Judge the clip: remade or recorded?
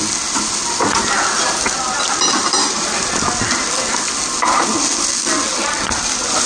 recorded